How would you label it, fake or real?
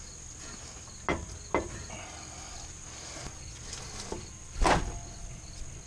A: real